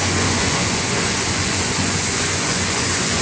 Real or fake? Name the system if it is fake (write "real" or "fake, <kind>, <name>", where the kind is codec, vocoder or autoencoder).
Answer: fake, vocoder, Vocos